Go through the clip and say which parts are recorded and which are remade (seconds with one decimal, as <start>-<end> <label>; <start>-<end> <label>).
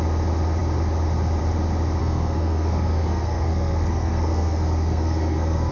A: 0.0-2.0 recorded; 2.0-5.7 remade